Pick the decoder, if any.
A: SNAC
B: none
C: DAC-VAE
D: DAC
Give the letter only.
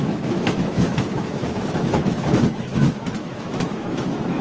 C